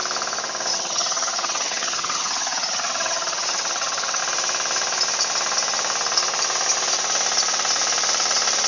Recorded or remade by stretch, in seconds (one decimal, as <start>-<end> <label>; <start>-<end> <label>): 0.0-0.7 recorded; 0.7-4.2 remade; 4.2-8.7 recorded